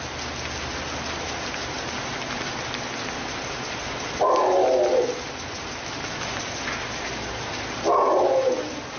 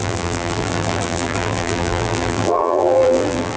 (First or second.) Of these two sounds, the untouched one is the first